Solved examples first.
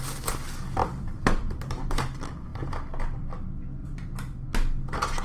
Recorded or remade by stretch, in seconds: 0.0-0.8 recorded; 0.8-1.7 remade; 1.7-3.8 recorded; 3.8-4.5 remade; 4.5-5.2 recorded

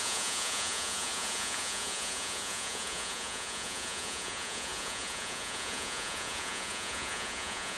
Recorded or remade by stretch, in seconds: 0.0-7.8 remade

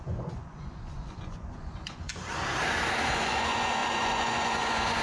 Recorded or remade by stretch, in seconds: 0.0-2.1 remade; 2.1-3.1 recorded; 3.1-5.0 remade

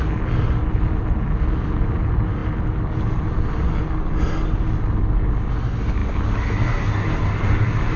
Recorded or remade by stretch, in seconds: 0.0-8.0 recorded

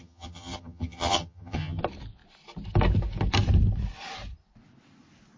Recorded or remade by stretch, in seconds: 0.0-1.8 remade; 1.8-5.4 recorded